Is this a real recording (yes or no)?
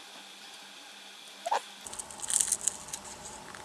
yes